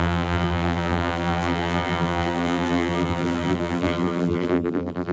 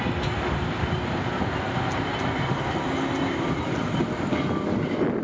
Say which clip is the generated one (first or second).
first